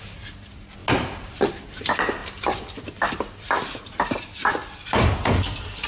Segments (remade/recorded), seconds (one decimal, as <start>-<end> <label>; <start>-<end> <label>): 0.0-0.8 remade; 0.8-1.5 recorded; 1.5-5.9 remade

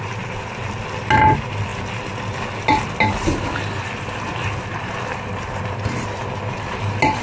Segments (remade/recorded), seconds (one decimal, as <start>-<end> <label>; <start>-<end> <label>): 0.0-7.2 recorded